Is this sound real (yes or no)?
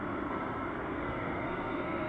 no